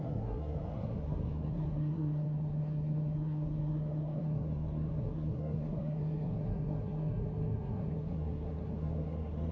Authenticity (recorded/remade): remade